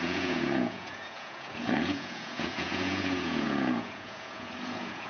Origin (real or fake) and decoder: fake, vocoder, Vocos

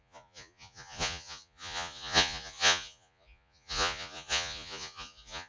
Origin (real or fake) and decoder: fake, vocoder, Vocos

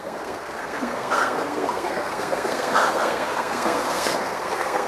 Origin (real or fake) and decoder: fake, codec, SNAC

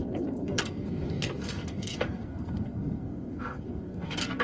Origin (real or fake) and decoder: fake, codec, SNAC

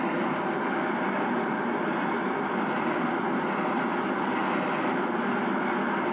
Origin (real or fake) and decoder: real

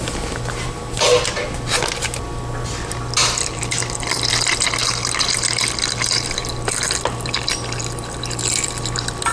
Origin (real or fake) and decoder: real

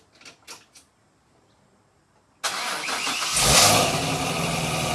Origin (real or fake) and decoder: real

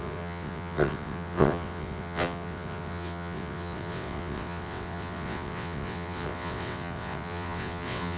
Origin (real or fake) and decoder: fake, vocoder, WaveNeXt